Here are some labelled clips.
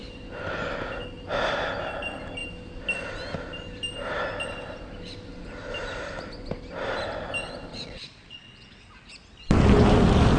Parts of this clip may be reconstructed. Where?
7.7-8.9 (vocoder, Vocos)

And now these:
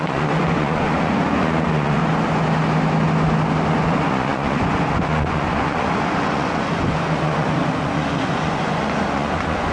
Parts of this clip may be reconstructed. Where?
0.0-2.0 (vocoder, Vocos); 3.7-9.7

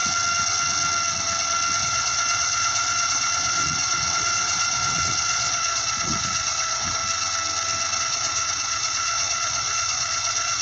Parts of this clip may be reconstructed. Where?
1.8-7.0 (vocoder, Vocos); 8.0-10.6